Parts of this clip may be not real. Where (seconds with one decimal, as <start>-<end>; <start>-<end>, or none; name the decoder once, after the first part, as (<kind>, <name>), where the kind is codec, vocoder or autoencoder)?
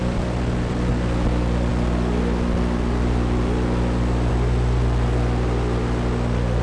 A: 0.0-0.9 (vocoder, BigVGAN v2)